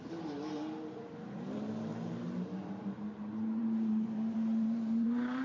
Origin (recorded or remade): remade